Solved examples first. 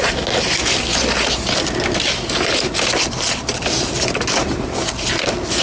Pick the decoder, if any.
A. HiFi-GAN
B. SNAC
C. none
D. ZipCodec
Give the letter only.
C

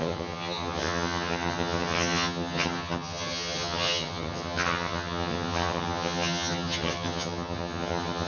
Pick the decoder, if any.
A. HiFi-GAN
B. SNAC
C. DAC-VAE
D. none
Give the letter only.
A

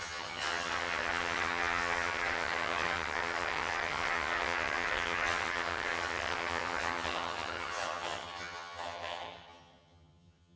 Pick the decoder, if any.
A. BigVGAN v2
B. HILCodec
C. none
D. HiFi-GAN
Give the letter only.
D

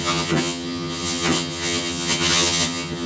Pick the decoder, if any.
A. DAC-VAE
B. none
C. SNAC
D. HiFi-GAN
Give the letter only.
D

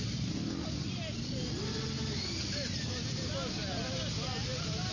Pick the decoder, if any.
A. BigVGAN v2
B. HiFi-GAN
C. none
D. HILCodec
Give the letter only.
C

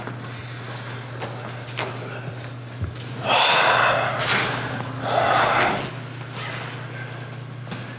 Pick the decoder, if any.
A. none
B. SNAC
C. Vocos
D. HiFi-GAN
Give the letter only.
A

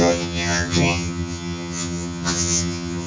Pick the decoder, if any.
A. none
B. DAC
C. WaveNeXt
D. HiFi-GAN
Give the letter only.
D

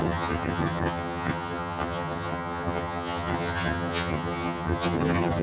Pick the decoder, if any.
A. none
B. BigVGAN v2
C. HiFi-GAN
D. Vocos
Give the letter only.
C